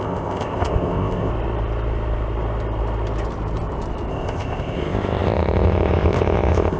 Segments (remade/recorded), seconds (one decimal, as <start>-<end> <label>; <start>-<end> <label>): 0.0-1.3 remade; 1.3-4.1 recorded; 4.1-6.8 remade